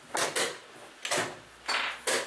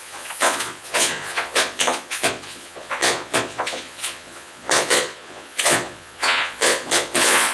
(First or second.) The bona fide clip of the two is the first